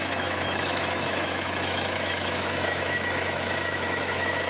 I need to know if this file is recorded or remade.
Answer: remade